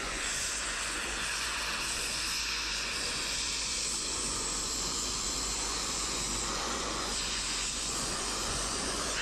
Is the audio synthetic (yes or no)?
yes